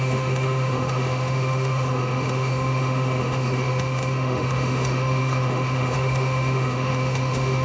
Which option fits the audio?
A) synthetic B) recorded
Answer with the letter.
A